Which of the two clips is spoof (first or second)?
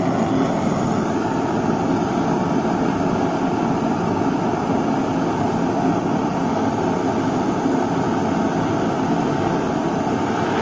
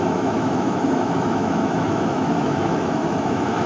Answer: second